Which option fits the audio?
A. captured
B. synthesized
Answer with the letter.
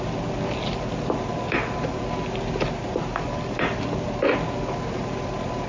A